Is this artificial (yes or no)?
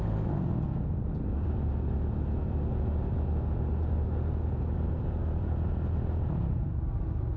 no